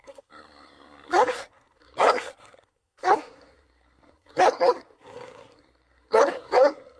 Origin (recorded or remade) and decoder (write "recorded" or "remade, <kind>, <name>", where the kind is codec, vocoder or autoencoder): remade, codec, SNAC